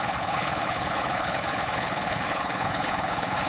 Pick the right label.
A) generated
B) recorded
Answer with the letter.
A